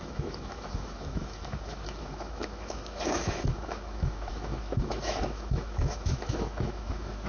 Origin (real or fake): fake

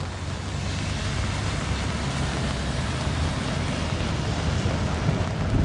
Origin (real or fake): real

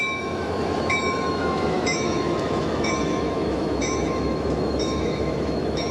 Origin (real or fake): fake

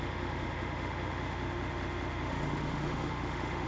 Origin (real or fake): fake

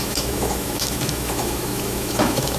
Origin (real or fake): fake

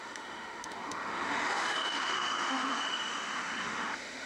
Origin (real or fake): fake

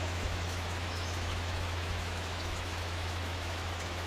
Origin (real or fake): fake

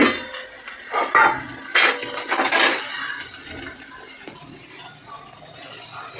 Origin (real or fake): real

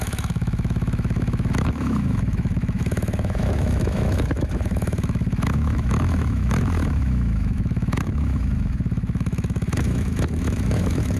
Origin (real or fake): fake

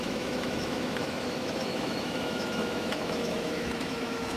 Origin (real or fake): fake